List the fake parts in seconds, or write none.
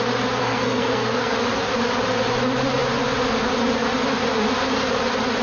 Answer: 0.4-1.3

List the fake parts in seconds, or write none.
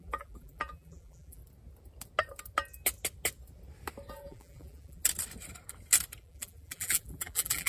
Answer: 0.0-1.4; 4.1-5.0; 6.2-7.7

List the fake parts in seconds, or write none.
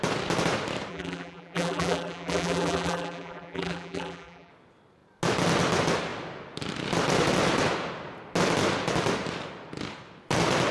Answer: 0.9-4.5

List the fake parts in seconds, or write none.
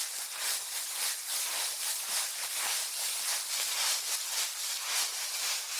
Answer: 0.0-2.8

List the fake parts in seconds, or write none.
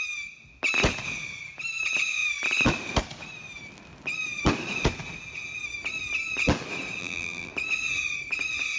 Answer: 7.0-7.5